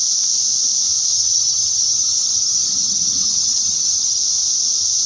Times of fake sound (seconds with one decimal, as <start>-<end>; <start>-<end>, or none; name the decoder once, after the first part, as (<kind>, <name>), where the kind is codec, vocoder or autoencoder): 1.1-4.2 (vocoder, HiFi-GAN)